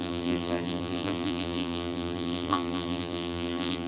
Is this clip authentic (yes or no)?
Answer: no